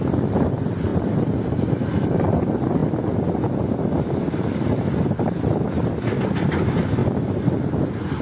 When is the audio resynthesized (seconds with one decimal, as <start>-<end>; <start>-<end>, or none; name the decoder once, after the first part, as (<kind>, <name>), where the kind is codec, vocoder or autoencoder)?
0.0-0.9 (vocoder, BigVGAN v2); 1.6-2.8; 4.2-7.0